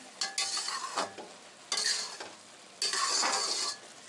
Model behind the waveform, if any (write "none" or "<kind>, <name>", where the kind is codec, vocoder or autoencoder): none